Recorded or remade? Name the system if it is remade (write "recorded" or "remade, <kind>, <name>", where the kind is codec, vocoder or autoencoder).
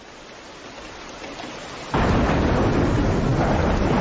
recorded